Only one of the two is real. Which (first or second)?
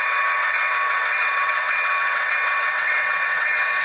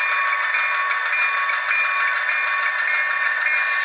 second